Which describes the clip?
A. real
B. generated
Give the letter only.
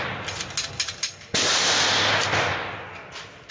A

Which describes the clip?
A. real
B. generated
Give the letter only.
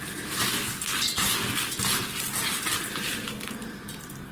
A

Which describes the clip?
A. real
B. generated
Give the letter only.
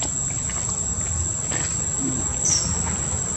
A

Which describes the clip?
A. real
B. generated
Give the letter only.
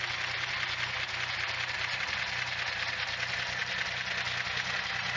A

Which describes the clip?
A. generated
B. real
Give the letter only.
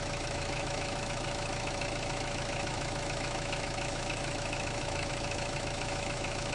A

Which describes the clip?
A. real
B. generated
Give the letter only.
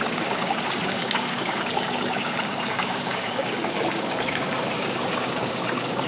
B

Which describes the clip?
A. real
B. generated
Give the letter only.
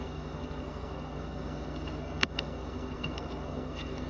B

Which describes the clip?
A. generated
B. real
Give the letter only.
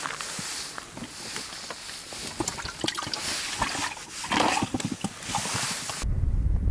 B